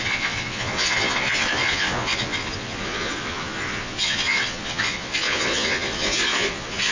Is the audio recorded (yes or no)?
no